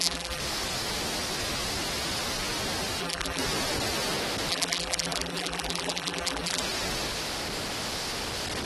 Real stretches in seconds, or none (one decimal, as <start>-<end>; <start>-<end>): 0.4-3.0; 3.4-4.5; 6.6-8.7